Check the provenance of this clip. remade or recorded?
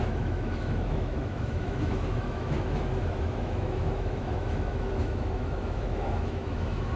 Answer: remade